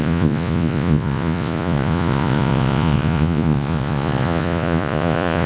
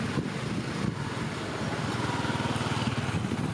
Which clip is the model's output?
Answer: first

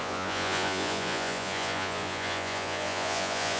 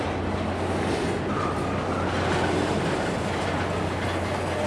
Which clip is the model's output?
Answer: first